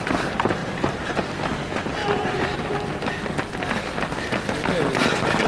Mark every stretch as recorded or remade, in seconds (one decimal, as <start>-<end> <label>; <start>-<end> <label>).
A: 0.0-0.6 recorded; 0.6-1.3 remade; 1.3-5.5 recorded